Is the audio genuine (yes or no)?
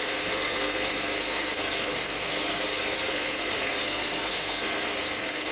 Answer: no